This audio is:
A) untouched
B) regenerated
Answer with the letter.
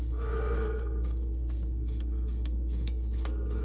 B